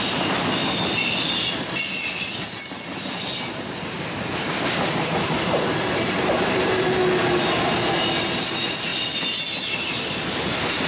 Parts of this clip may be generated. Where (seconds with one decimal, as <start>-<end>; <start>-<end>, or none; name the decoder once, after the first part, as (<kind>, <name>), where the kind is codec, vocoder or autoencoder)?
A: 0.0-0.6 (vocoder, BigVGAN v2); 4.5-8.9; 10.3-10.9